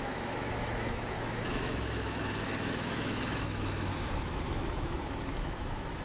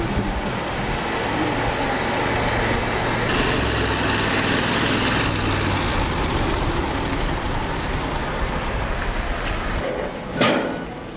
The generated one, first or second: first